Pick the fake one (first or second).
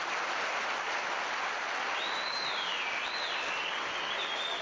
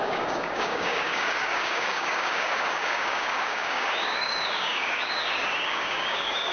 second